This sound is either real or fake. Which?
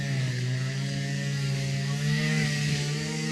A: fake